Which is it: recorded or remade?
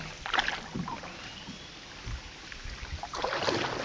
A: recorded